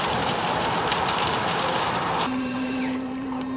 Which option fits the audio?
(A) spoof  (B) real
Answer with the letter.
A